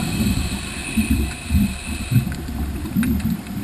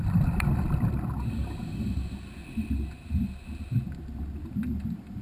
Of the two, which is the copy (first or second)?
first